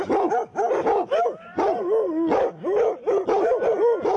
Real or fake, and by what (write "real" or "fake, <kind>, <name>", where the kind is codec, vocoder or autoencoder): real